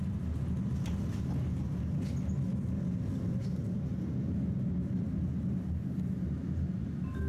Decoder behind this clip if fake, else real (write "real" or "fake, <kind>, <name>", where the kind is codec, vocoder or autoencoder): real